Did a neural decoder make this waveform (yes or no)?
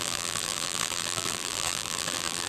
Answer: yes